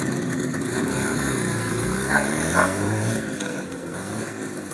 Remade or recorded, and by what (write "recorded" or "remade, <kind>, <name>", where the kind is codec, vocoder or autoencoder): remade, codec, SNAC